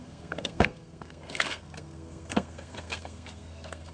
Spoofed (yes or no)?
yes